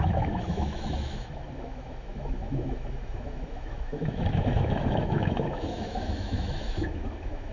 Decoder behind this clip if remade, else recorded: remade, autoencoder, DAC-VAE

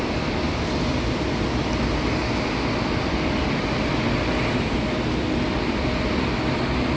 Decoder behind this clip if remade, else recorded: recorded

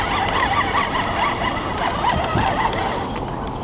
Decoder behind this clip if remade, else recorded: recorded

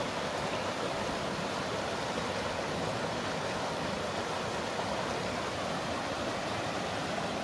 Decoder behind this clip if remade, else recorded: recorded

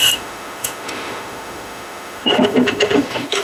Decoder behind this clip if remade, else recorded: remade, autoencoder, DAC-VAE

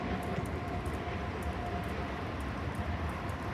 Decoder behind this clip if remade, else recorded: recorded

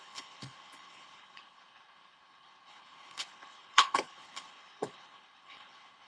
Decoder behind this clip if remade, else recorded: remade, codec, HILCodec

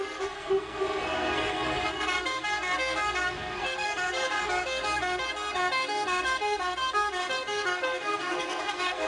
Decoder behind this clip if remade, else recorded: remade, codec, SNAC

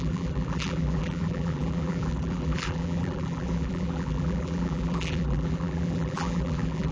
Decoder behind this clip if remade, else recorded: remade, vocoder, BigVGAN v2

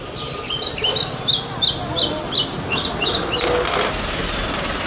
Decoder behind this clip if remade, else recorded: recorded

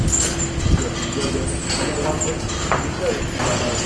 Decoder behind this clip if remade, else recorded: recorded